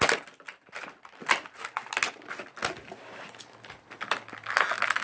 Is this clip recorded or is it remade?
recorded